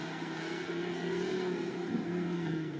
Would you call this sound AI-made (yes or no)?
yes